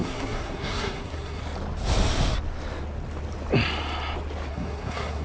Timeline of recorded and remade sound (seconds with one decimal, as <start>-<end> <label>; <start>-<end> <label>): 0.0-1.4 remade; 1.4-4.5 recorded; 4.5-5.2 remade